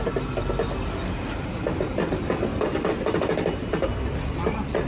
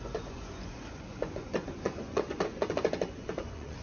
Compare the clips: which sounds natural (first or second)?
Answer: first